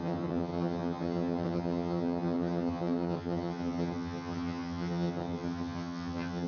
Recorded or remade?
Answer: remade